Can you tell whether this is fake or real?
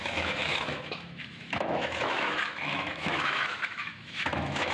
fake